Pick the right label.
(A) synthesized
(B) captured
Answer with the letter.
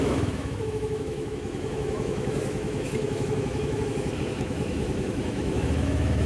A